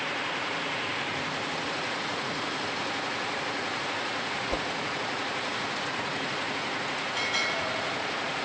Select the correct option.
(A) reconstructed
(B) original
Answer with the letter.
A